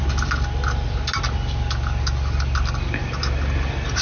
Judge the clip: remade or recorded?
recorded